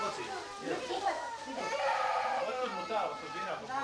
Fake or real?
fake